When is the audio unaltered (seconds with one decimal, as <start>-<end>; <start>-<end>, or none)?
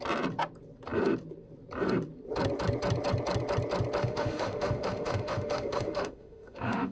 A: 0.0-4.0